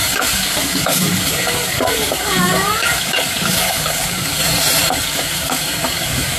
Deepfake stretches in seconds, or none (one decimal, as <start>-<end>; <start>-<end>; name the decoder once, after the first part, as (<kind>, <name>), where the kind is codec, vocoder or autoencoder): 0.0-4.4 (codec, DAC); 4.9-6.4